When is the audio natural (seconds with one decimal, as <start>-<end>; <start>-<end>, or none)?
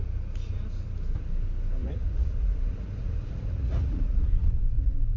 0.0-1.8